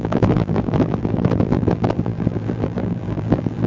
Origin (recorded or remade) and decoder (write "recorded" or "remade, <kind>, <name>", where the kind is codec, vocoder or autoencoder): remade, vocoder, BigVGAN v2